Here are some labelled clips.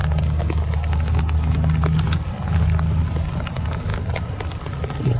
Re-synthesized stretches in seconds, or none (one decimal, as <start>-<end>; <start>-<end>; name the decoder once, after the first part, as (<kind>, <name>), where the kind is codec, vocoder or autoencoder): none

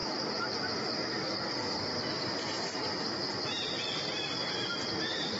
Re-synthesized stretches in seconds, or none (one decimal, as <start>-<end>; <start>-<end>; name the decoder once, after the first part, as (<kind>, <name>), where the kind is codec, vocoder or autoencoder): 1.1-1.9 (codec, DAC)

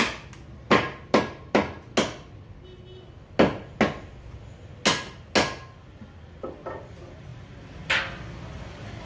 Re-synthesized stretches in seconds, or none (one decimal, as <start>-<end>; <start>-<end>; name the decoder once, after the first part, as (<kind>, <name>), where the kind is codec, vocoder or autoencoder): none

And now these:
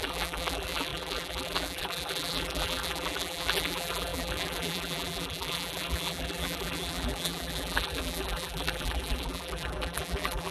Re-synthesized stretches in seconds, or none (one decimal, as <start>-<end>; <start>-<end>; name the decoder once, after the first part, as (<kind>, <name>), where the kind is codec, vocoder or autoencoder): 0.0-10.5 (vocoder, BigVGAN v2)

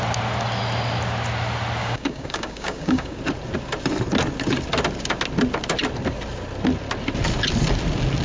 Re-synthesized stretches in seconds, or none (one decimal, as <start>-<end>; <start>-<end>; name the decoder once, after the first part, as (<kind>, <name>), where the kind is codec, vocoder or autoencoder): 1.8-3.2 (codec, DAC)